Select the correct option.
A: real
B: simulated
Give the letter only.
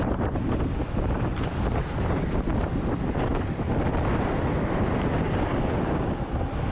A